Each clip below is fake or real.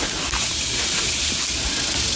real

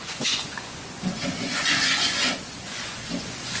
fake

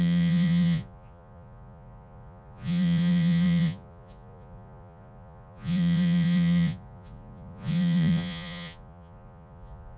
fake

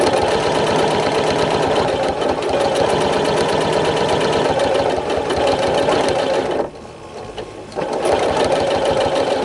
real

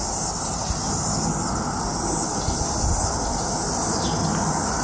real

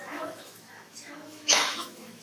fake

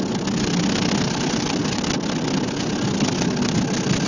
real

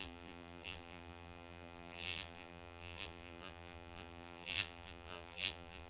fake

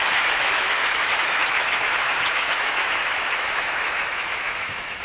fake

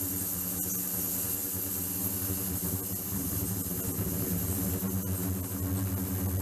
real